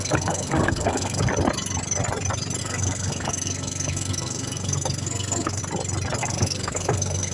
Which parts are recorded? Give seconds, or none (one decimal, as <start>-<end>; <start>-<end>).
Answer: 1.3-2.6; 5.6-6.2